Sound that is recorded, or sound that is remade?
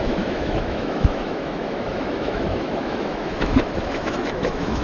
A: remade